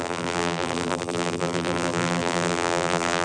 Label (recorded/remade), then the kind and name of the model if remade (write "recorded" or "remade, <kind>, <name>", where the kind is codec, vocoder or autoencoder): remade, vocoder, BigVGAN v2